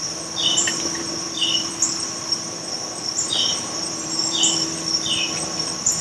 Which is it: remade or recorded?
remade